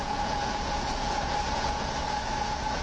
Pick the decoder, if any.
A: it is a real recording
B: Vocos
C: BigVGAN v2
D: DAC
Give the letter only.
B